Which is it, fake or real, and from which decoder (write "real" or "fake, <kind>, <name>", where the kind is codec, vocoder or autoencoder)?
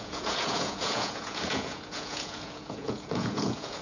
fake, vocoder, Vocos